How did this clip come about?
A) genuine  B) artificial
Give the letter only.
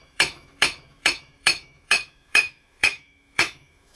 B